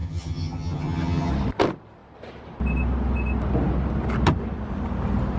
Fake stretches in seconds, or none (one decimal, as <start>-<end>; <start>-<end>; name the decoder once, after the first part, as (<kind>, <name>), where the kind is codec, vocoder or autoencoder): 0.0-1.3 (vocoder, HiFi-GAN)